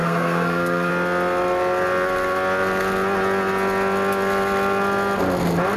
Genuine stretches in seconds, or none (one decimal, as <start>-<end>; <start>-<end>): 0.9-5.8